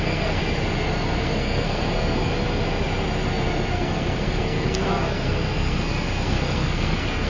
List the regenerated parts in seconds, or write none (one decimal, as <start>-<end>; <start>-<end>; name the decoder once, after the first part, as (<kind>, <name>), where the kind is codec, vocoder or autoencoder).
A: 0.0-0.4 (codec, SNAC); 1.2-2.3; 3.7-7.3